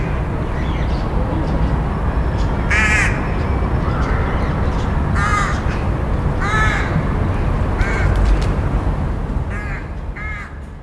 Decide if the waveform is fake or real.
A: real